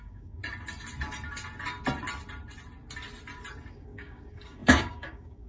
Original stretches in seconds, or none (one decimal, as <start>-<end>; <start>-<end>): 0.4-3.7